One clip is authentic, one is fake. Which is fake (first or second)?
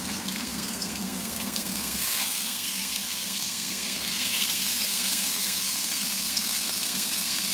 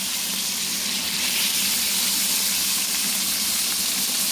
first